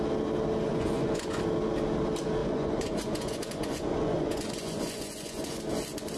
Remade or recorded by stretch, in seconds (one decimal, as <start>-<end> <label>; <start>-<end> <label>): 0.0-0.7 recorded; 0.7-1.4 remade; 1.4-2.4 recorded; 2.4-5.6 remade; 5.6-6.2 recorded